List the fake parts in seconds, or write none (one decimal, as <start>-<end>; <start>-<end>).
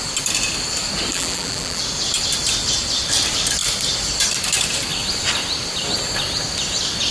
1.1-1.8